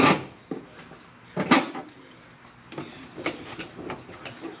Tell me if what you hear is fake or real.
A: fake